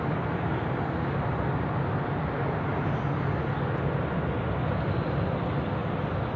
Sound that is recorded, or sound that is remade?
recorded